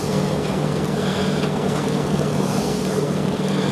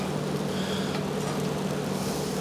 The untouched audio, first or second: second